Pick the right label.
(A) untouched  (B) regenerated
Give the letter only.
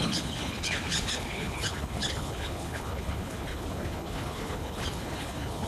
B